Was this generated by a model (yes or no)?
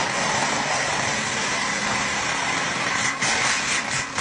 no